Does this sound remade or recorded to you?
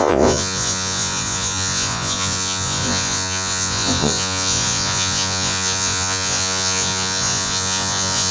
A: remade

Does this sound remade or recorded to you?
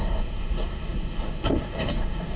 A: remade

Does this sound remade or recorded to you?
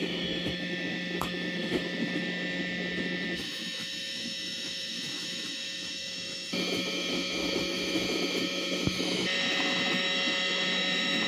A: remade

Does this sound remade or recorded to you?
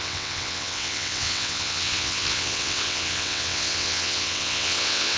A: remade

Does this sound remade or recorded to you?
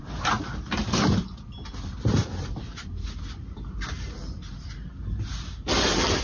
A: recorded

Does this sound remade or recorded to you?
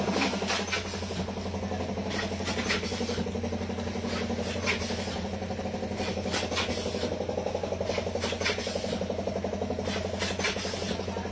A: recorded